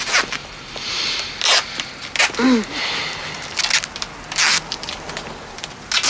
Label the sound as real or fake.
real